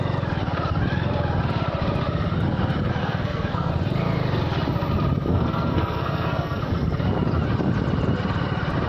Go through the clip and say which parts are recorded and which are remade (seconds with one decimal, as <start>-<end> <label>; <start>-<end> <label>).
0.0-3.0 recorded; 3.0-3.7 remade; 3.7-5.3 recorded; 5.3-6.6 remade; 6.6-8.9 recorded